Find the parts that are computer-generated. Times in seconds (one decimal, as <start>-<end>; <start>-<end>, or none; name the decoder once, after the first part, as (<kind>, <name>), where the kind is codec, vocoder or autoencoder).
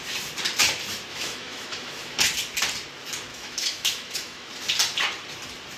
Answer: 1.1-2.2 (autoencoder, DAC-VAE); 3.3-4.5